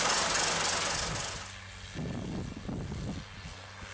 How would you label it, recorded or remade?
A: recorded